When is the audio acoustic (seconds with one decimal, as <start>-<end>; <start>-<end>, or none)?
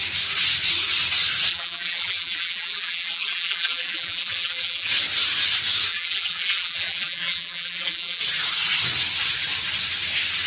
0.0-1.5; 4.9-5.9; 8.2-10.5